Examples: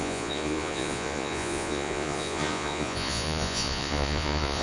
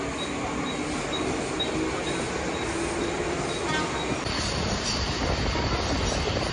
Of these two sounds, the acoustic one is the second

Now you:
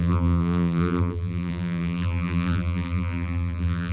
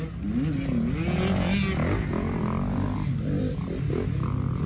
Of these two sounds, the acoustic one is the second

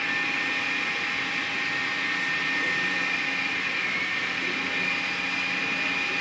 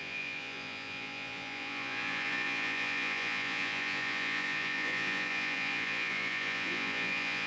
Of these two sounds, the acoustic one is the first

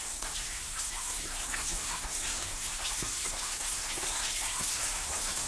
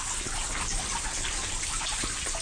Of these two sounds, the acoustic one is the second